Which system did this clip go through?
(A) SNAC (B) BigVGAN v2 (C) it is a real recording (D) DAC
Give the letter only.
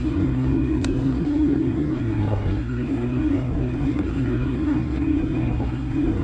A